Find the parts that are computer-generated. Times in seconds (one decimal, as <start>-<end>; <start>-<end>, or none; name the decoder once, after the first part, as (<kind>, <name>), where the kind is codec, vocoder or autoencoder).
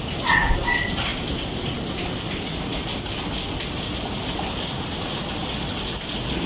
2.7-5.9 (vocoder, BigVGAN v2)